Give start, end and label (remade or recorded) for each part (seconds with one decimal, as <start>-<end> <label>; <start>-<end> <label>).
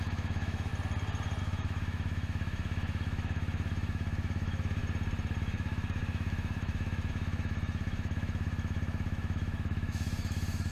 0.0-0.7 remade; 0.7-1.4 recorded; 1.4-4.8 remade; 4.8-5.4 recorded; 5.4-10.7 remade